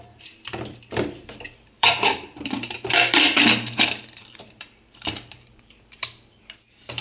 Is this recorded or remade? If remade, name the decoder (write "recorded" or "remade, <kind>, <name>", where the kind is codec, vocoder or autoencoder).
remade, vocoder, BigVGAN v2